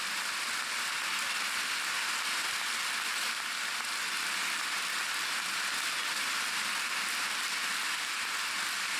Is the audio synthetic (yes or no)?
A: no